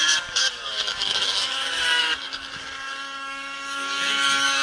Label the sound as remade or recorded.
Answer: remade